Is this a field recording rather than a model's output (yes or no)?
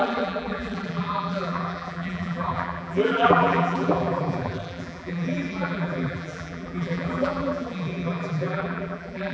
no